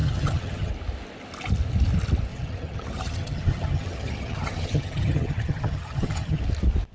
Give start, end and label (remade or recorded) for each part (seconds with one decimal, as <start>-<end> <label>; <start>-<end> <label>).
0.0-0.7 remade; 0.7-2.3 recorded; 2.3-6.4 remade; 6.4-6.9 recorded